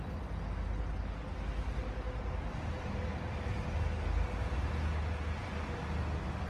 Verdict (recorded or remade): recorded